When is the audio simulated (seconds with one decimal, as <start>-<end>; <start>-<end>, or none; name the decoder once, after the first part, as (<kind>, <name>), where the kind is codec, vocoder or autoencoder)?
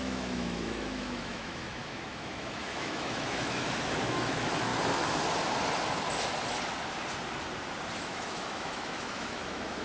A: 0.0-4.7 (autoencoder, DAC-VAE); 8.0-9.8